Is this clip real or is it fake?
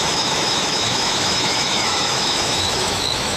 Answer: fake